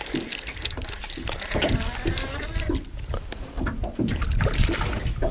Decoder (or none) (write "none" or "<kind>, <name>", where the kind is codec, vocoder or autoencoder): none